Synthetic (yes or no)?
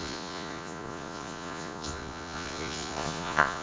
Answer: yes